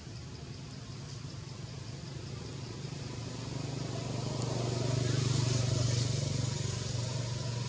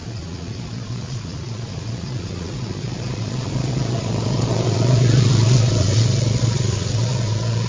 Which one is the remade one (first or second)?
second